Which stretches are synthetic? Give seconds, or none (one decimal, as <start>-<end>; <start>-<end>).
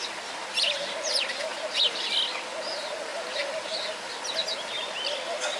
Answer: none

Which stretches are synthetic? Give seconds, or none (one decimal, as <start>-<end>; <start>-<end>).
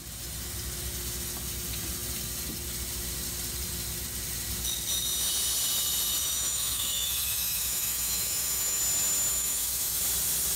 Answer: 6.2-8.8; 9.3-10.0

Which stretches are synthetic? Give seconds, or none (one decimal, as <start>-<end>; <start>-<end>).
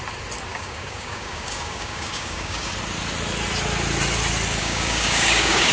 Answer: 0.5-2.7; 4.6-5.7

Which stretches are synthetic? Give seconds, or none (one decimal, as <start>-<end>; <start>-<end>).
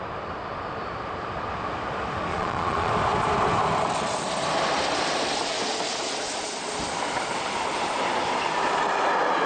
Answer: 2.3-2.9